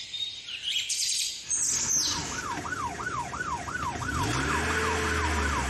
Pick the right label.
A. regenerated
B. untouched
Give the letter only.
B